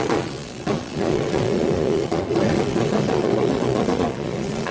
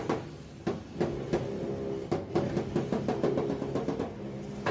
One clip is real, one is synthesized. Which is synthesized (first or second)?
first